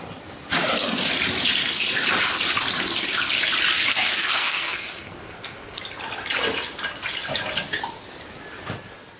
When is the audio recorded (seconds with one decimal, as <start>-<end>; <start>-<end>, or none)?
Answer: 0.0-3.9; 5.8-9.2